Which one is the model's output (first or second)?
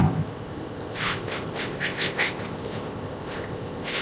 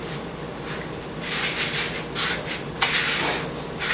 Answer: first